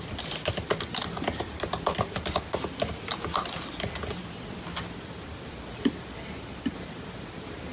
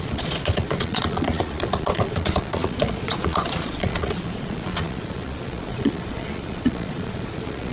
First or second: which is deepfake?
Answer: second